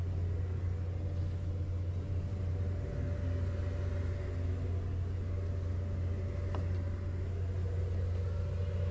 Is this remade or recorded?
recorded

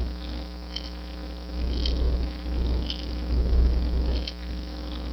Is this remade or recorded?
recorded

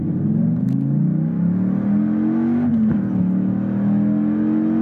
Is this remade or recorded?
recorded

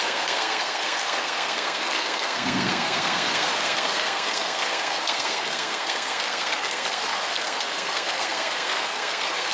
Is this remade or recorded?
remade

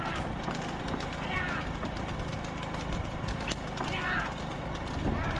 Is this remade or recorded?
recorded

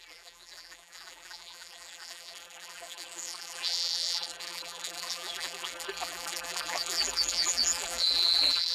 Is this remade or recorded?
remade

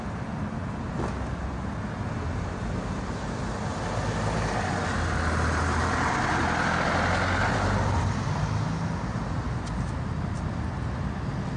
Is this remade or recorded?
recorded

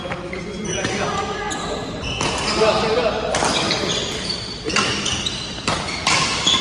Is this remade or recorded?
recorded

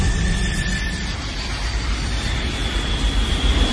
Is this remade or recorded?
remade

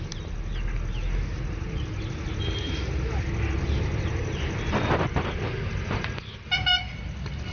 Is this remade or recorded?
recorded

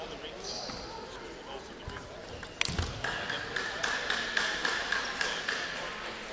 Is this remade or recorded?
recorded